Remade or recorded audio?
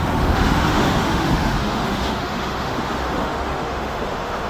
remade